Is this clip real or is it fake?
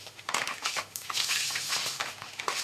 fake